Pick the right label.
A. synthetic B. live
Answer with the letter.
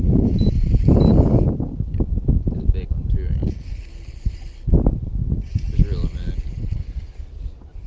B